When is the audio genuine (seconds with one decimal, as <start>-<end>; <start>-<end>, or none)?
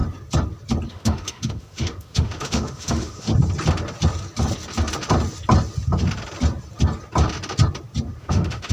0.0-0.9; 3.3-8.2